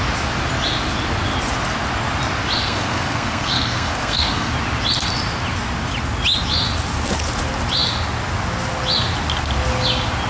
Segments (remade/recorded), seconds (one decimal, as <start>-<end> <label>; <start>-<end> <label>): 0.0-2.6 recorded; 2.6-4.5 remade; 4.5-10.3 recorded